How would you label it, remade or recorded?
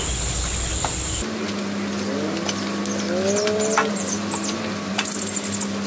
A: recorded